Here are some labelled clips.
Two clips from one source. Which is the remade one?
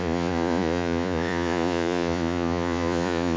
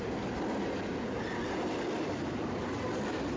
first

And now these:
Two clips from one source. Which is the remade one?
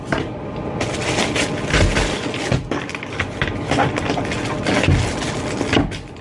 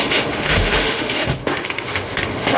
second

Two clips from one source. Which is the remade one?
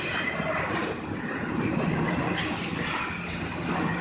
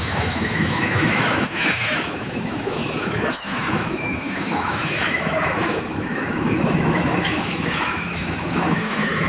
second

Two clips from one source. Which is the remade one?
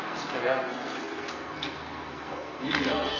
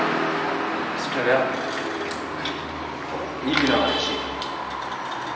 first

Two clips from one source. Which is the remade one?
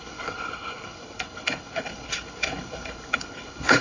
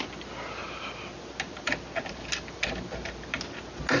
first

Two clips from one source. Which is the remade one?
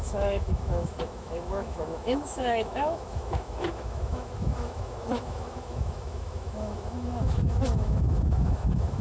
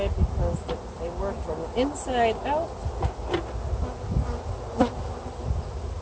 first